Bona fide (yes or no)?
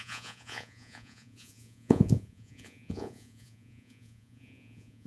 no